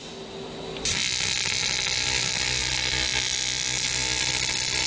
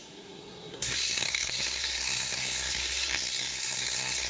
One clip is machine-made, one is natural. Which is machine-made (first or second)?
second